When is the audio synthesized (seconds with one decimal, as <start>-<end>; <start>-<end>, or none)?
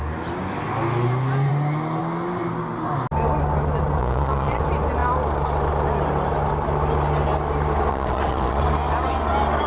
4.0-4.6; 7.9-8.6